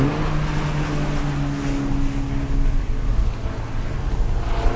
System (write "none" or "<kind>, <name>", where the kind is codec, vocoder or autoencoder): none